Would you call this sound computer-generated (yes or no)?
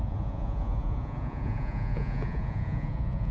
yes